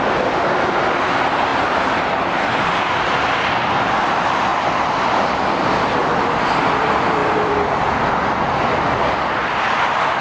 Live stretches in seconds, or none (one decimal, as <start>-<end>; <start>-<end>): 6.0-6.8